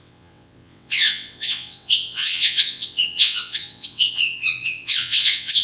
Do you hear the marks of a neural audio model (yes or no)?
yes